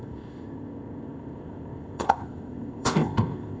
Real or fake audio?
fake